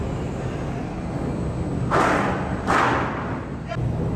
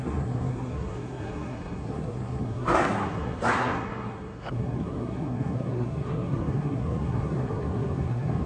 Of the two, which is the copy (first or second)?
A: second